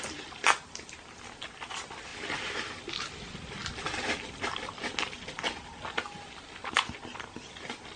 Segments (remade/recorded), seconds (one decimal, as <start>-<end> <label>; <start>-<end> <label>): 0.0-8.0 recorded